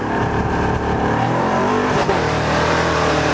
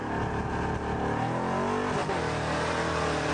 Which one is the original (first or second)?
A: second